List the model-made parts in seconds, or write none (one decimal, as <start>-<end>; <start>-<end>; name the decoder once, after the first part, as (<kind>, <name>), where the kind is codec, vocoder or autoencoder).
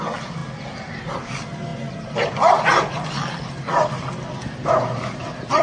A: none